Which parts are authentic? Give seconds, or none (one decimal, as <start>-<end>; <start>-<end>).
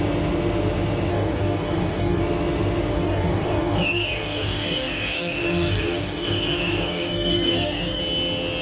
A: 0.0-1.1; 2.2-2.9; 8.0-8.6